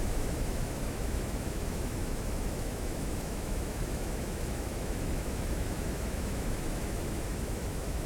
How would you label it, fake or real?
fake